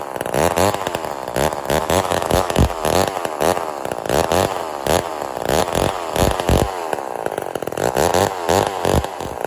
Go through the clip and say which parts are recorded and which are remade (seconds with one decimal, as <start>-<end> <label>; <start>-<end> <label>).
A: 0.0-1.8 recorded; 1.8-2.6 remade; 2.6-9.5 recorded